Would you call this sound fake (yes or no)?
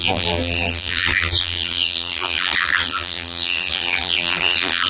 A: yes